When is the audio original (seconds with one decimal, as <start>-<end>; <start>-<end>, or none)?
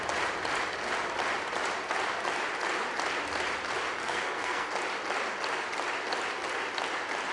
0.0-4.0; 4.7-7.3